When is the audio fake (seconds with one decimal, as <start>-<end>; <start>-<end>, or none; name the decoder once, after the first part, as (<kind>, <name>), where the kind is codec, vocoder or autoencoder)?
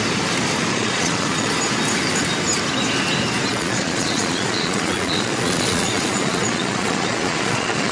0.7-1.5 (vocoder, Vocos); 3.5-7.9